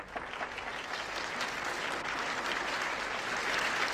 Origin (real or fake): real